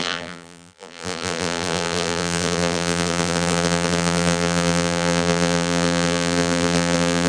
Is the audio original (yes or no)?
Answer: no